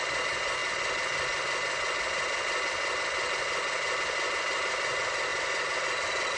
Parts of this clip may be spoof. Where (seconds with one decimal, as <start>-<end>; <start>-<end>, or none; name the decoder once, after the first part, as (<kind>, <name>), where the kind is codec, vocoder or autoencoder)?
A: none